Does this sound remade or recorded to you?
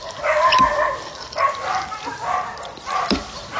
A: recorded